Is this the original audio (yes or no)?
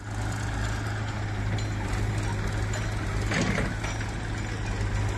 yes